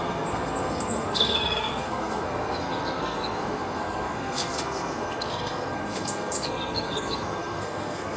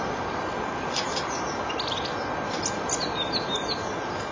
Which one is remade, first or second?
first